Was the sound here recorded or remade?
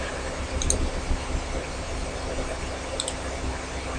recorded